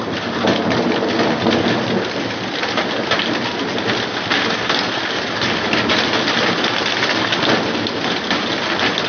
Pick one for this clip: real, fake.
real